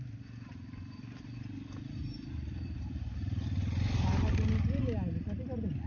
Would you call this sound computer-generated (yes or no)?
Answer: no